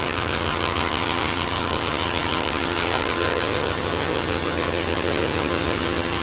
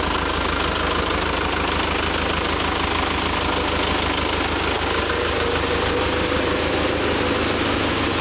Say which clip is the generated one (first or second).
first